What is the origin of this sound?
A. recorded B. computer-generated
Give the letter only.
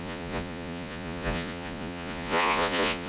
B